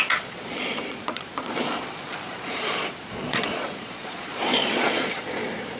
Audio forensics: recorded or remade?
remade